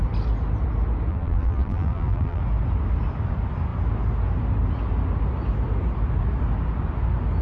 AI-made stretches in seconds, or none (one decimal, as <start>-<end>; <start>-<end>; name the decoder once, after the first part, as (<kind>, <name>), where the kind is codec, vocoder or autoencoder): 1.1-2.4 (vocoder, BigVGAN v2)